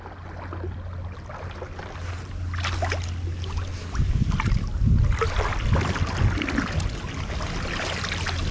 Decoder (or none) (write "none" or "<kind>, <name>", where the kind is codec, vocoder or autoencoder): none